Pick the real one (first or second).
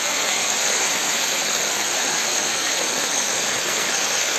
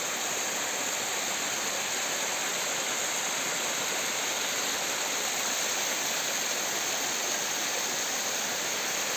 second